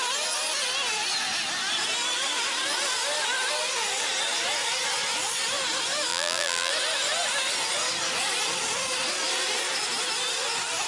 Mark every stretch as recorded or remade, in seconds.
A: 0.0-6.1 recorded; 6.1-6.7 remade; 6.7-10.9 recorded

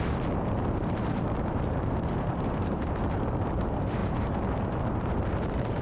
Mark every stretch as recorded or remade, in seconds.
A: 0.0-5.8 remade

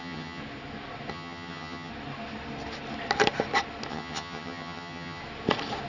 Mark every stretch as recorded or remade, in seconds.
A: 0.0-0.4 remade; 0.4-1.1 recorded; 1.1-1.9 remade; 1.9-3.9 recorded; 3.9-5.2 remade; 5.2-5.9 recorded

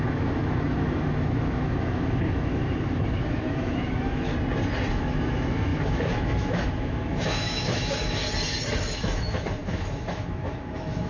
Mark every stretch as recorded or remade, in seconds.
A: 0.0-4.3 remade; 4.3-4.9 recorded; 4.9-8.2 remade; 8.2-8.8 recorded; 8.8-11.1 remade

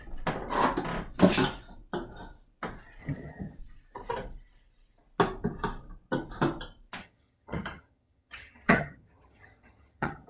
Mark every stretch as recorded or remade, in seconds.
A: 0.0-3.0 recorded; 3.0-3.6 remade; 3.6-7.0 recorded; 7.0-10.3 remade

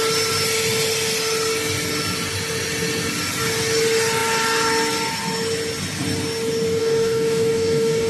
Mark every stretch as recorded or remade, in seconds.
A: 0.0-6.8 recorded; 6.8-8.1 remade